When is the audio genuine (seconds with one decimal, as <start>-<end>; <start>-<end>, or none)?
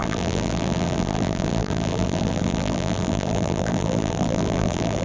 none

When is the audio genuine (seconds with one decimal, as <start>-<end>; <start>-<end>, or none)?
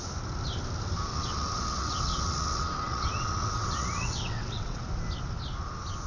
0.0-1.1; 4.8-6.1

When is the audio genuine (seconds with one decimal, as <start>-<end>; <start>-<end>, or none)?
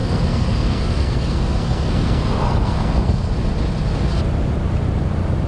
3.3-5.5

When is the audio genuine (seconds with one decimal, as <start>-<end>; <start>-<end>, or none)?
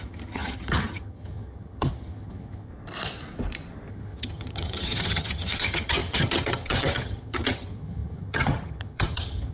2.7-3.9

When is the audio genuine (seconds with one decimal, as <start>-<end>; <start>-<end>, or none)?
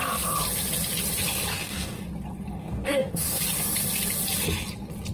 0.0-1.5; 2.0-2.6; 3.4-5.1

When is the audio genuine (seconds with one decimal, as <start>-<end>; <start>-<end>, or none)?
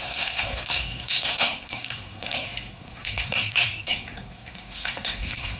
none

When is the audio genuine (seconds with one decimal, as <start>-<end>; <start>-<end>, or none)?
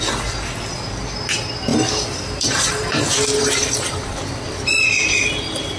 0.0-1.7; 5.2-5.8